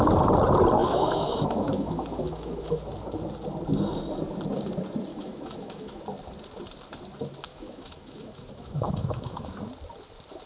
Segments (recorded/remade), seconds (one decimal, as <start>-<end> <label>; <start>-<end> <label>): 0.0-0.8 recorded; 0.8-2.8 remade; 2.8-5.1 recorded; 5.1-6.0 remade; 6.0-7.5 recorded; 7.5-9.5 remade; 9.5-10.5 recorded